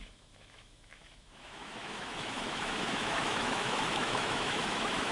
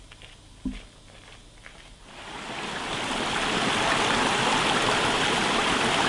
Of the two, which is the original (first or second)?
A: second